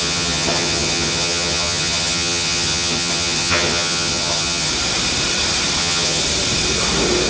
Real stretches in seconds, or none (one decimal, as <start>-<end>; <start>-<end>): 4.7-5.8; 6.2-7.3